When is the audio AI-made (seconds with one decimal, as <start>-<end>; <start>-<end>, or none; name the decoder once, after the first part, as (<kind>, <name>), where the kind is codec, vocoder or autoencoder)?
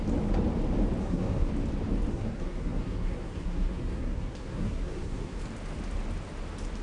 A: 1.0-1.5 (codec, SNAC); 2.1-5.4